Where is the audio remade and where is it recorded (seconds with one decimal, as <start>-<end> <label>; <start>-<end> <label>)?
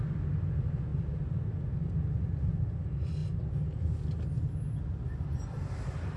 0.0-0.9 remade; 0.9-2.1 recorded; 2.1-3.2 remade; 3.2-5.1 recorded; 5.1-6.2 remade